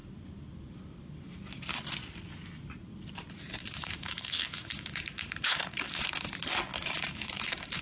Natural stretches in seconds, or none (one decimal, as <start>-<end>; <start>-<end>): 0.0-3.6; 6.3-6.7